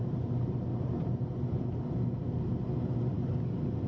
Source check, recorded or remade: recorded